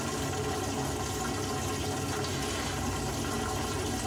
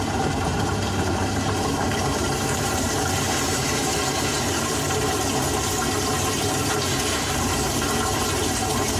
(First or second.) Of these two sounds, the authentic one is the first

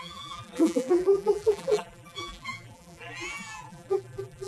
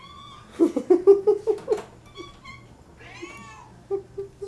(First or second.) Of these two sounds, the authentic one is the second